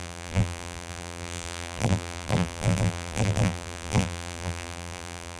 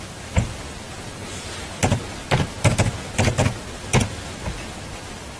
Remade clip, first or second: first